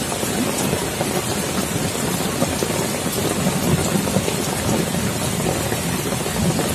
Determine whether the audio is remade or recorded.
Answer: recorded